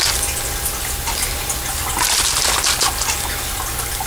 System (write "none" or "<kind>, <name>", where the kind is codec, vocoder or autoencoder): none